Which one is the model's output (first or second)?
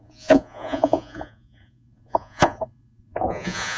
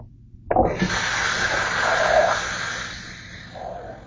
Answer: first